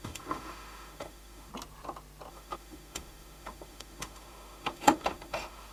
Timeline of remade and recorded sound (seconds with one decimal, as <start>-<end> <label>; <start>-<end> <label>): 0.0-1.5 remade; 1.5-2.3 recorded; 2.3-5.7 remade

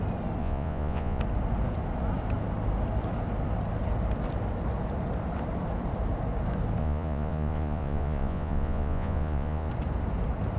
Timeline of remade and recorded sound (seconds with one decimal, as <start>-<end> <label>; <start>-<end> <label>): 0.0-0.4 recorded; 0.4-1.2 remade; 1.2-6.8 recorded; 6.8-9.7 remade; 9.7-10.6 recorded

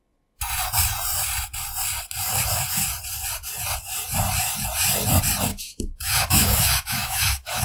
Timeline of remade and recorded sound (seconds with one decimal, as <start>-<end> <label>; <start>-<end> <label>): 0.0-5.5 recorded; 5.5-7.6 remade